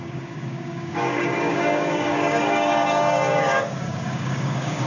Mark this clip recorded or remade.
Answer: remade